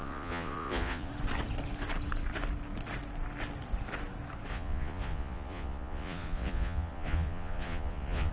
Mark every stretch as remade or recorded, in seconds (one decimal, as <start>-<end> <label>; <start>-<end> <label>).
0.0-1.1 remade; 1.1-4.5 recorded; 4.5-8.3 remade